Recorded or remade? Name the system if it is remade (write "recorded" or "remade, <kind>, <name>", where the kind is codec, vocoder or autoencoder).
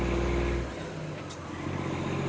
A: recorded